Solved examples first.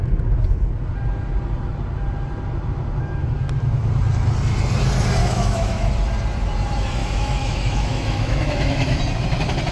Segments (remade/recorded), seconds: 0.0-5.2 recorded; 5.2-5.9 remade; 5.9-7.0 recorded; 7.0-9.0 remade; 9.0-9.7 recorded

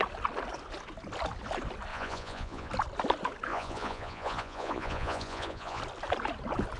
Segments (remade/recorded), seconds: 0.0-1.9 recorded; 1.9-2.7 remade; 2.7-3.5 recorded; 3.5-5.8 remade; 5.8-6.8 recorded